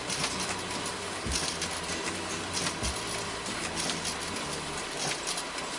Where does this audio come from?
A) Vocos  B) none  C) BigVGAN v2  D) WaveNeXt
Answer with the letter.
B